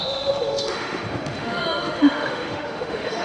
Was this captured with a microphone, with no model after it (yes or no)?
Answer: no